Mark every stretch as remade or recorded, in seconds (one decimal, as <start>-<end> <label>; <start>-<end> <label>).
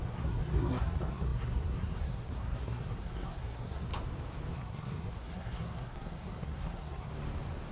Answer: 0.0-3.9 remade; 3.9-4.5 recorded; 4.5-7.1 remade; 7.1-7.7 recorded